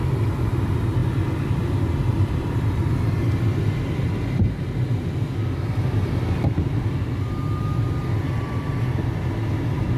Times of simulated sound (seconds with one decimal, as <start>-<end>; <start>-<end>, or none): none